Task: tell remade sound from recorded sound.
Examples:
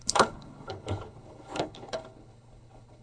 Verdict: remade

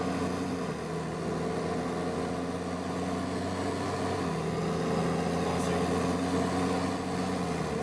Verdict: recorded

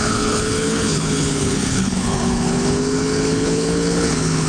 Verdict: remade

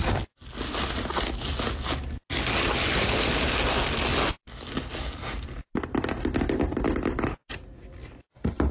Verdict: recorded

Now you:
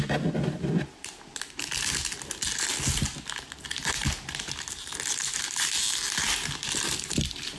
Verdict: recorded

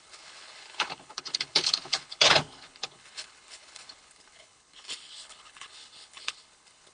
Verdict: remade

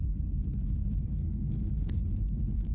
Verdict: remade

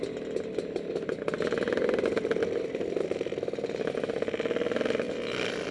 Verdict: recorded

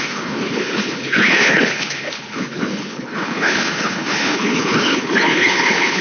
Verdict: remade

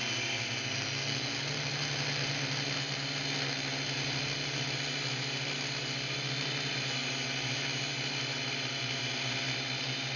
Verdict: recorded